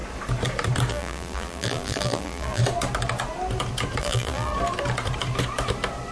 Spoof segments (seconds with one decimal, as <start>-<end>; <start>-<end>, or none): 0.9-2.6; 4.0-4.5